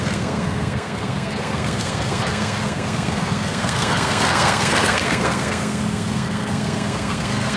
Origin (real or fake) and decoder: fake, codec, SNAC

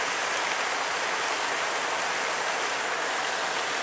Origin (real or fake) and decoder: real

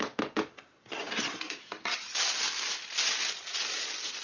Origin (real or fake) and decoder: real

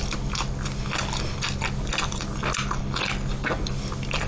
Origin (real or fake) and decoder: real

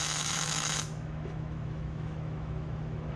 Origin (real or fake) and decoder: fake, autoencoder, DAC-VAE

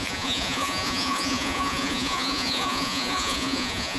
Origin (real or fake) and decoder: fake, vocoder, Vocos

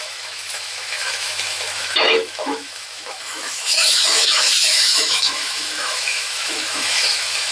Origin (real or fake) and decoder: fake, autoencoder, DAC-VAE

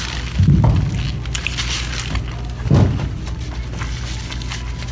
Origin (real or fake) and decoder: real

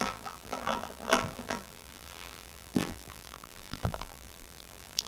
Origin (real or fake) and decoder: fake, vocoder, BigVGAN v2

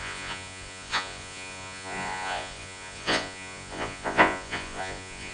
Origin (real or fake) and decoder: fake, vocoder, Vocos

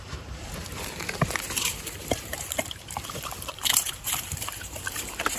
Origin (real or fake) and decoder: fake, vocoder, BigVGAN v2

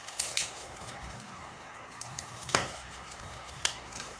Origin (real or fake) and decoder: fake, codec, SNAC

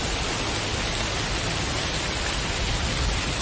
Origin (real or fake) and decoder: real